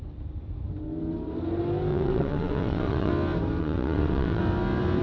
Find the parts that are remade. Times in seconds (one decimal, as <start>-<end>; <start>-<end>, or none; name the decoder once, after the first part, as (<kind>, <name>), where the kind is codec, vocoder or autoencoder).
1.9-3.1 (vocoder, WaveNeXt); 3.6-4.4